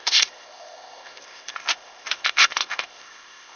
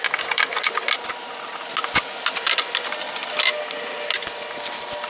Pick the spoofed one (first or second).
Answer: first